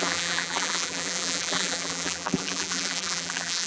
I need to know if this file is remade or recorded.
remade